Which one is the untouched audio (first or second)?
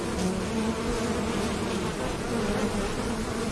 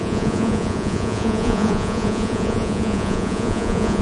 first